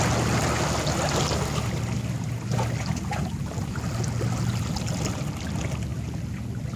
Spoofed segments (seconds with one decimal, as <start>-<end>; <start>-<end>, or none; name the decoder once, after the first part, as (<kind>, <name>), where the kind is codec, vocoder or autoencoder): none